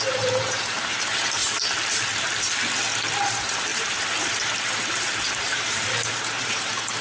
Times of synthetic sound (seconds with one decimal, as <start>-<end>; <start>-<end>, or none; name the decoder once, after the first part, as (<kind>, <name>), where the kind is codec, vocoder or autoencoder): 0.0-1.4 (vocoder, BigVGAN v2); 3.2-7.0